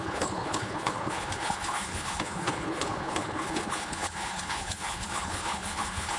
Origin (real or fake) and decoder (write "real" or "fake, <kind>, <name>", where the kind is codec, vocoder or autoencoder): fake, codec, HILCodec